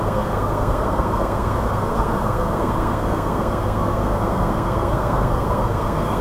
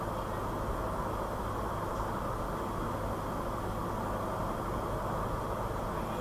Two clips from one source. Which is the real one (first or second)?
second